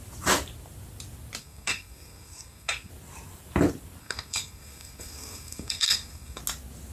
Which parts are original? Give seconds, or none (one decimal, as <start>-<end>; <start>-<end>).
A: 0.0-1.4; 2.9-4.0; 6.4-6.9